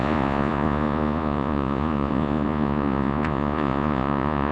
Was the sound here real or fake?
fake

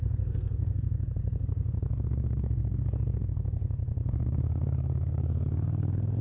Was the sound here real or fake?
fake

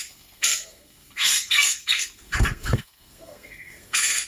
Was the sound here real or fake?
fake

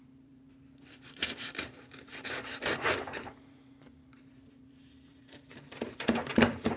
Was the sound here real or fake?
fake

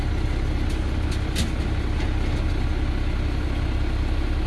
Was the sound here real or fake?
real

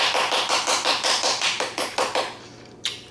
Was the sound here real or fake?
real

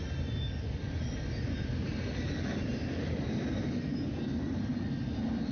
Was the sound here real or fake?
real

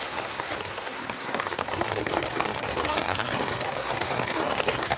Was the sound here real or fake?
fake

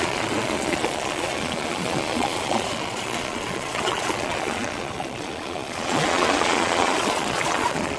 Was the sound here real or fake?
fake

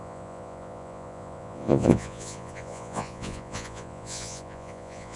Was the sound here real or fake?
fake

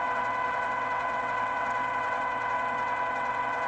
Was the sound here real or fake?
fake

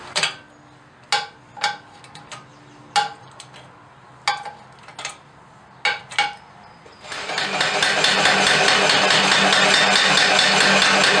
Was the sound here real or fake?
real